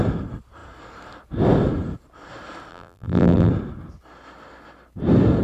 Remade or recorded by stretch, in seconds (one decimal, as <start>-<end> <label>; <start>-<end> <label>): 0.0-2.7 recorded; 2.7-3.5 remade; 3.5-5.4 recorded